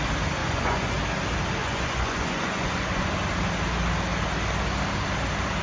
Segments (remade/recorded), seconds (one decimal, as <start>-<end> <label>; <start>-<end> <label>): 0.0-0.4 recorded; 0.4-0.9 remade; 0.9-1.6 recorded; 1.6-3.1 remade; 3.1-5.6 recorded